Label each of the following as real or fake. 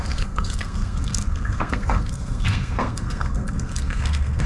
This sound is fake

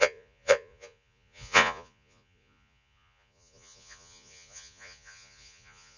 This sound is fake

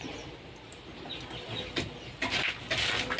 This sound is real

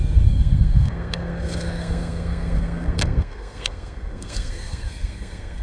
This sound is fake